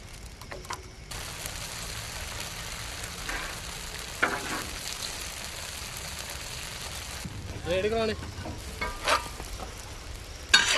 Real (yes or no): yes